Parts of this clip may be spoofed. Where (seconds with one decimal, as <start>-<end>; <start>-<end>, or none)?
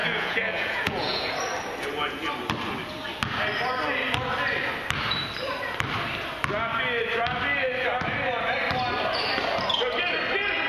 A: 0.0-1.3